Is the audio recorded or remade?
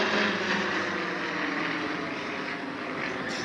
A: recorded